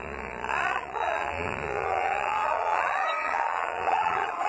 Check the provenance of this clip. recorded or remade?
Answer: remade